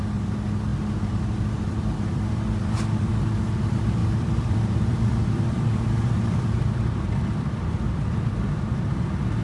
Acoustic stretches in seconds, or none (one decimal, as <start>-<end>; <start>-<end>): 0.0-0.7; 3.1-4.0; 8.8-9.4